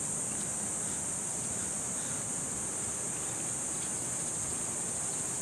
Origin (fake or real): real